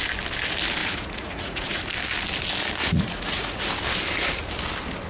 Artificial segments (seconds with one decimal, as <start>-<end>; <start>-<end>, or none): 0.8-1.8; 2.8-3.7